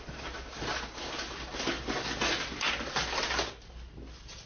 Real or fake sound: real